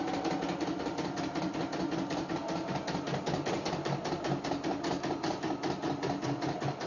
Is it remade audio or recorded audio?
recorded